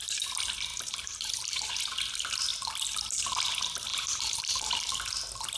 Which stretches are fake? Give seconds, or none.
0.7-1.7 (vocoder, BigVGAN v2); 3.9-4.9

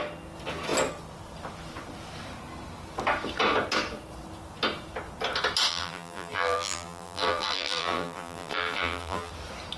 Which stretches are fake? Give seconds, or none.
5.7-9.3 (vocoder, BigVGAN v2)

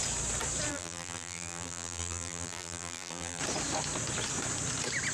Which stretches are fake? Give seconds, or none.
0.7-3.4 (vocoder, BigVGAN v2)

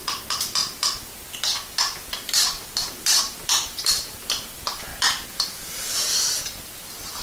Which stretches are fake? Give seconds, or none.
0.0-0.6 (vocoder, BigVGAN v2); 1.7-7.2

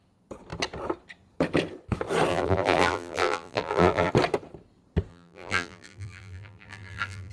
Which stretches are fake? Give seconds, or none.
2.3-4.1 (vocoder, BigVGAN v2); 5.1-7.3

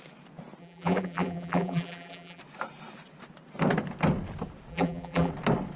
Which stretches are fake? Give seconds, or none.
0.6-2.4 (vocoder, BigVGAN v2); 4.7-5.3

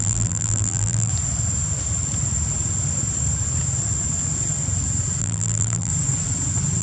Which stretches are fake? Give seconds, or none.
0.0-1.1 (vocoder, BigVGAN v2); 5.2-5.9